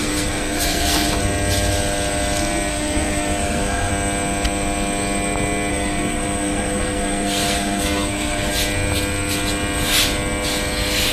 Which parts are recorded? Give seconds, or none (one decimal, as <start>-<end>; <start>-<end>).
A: 1.2-2.7; 3.9-5.7; 8.5-11.1